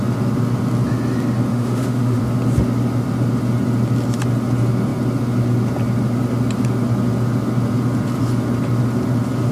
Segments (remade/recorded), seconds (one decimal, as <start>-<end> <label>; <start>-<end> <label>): 0.0-1.5 recorded; 1.5-2.2 remade; 2.2-9.5 recorded